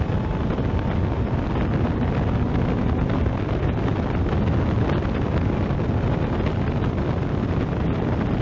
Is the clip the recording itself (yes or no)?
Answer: yes